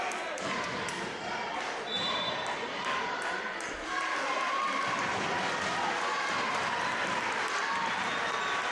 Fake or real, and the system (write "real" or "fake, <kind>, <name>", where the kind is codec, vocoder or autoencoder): real